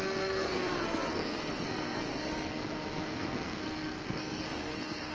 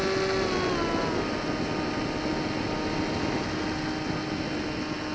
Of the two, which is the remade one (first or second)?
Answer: first